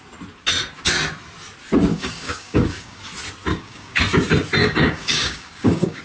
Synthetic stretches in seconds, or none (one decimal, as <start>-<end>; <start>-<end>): 1.9-3.0; 3.5-4.0; 4.6-6.0

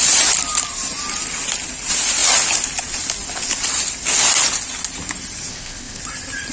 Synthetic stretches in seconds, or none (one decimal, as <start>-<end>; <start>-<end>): 5.5-6.0

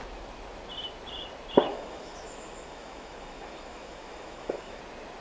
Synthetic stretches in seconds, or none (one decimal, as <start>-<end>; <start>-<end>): 1.7-4.8

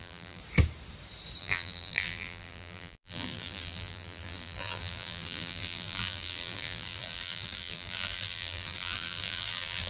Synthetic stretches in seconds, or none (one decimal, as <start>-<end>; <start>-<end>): 0.0-0.4; 1.4-9.9

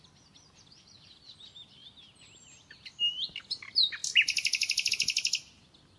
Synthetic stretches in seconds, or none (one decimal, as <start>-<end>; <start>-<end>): none